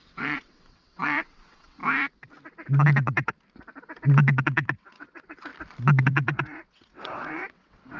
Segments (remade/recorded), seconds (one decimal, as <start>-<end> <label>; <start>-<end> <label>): 0.0-1.8 remade; 1.8-4.4 recorded; 4.4-5.5 remade; 5.5-6.0 recorded; 6.0-8.0 remade